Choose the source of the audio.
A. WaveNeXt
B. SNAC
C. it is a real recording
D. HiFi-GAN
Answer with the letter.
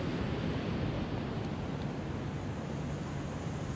C